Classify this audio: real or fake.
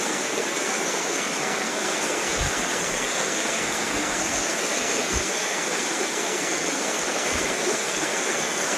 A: fake